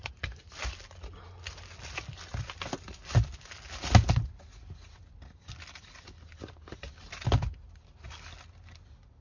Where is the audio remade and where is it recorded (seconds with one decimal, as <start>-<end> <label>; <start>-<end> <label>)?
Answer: 0.0-9.2 recorded